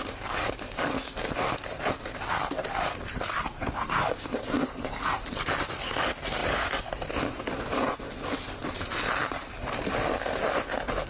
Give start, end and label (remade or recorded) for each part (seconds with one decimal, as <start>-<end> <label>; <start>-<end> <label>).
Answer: 0.0-11.1 recorded